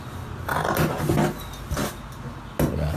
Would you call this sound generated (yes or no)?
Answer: no